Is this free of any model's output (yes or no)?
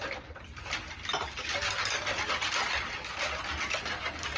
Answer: yes